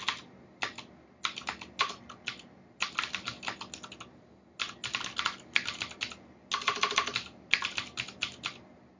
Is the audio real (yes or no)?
yes